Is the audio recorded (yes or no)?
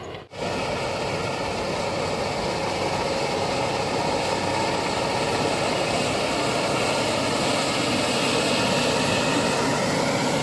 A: yes